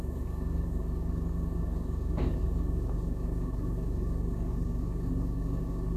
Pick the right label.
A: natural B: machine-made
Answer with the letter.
B